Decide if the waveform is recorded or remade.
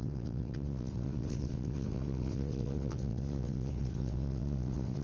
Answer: remade